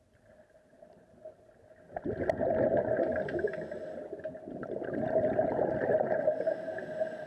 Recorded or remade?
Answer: recorded